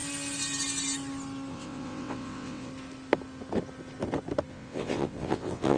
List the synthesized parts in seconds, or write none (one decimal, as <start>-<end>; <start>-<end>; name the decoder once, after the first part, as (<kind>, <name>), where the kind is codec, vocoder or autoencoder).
1.5-2.7 (vocoder, WaveNeXt); 4.5-5.8